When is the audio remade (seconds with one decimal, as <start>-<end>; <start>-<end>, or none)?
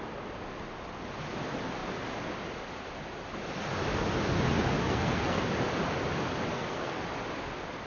4.8-5.4; 6.5-7.0